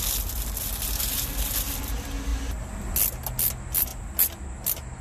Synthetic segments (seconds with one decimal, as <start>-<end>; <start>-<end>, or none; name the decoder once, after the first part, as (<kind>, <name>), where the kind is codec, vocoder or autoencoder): none